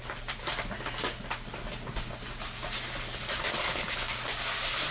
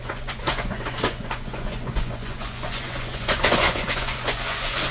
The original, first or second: first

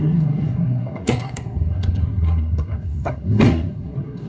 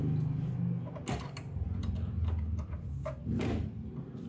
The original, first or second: second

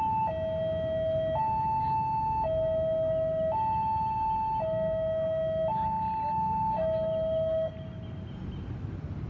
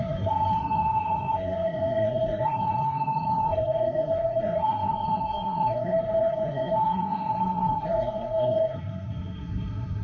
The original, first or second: first